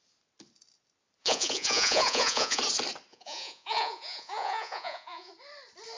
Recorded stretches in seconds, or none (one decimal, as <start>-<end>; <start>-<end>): 0.0-1.2; 2.6-3.1; 5.3-6.0